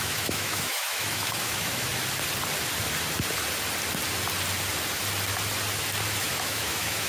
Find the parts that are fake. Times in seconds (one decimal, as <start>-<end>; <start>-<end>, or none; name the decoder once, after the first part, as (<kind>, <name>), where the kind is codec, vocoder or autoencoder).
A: 0.0-1.9 (autoencoder, DAC-VAE); 6.2-7.1